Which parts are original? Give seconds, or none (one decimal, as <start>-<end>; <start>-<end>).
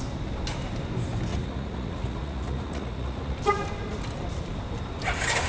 0.0-1.3; 3.4-5.5